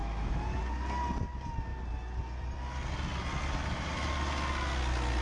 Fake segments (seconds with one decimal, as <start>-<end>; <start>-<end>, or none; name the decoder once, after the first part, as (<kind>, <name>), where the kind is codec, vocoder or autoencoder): 0.0-0.6 (autoencoder, DAC-VAE)